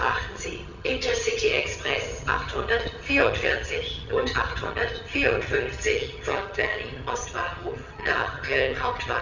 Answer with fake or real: fake